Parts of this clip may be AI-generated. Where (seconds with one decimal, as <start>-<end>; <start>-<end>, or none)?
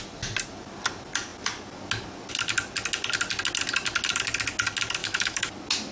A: 5.0-5.5